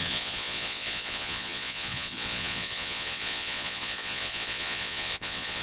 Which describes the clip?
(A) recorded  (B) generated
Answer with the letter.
B